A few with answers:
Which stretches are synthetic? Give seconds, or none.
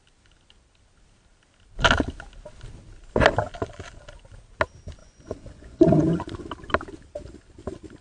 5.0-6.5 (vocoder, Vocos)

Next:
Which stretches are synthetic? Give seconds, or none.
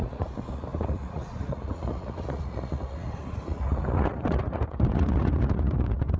0.0-6.2 (vocoder, Vocos)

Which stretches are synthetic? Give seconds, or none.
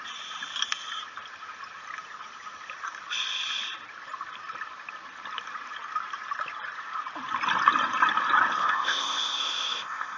8.6-10.2 (codec, ZipCodec)